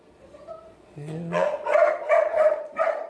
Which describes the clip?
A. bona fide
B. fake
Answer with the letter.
B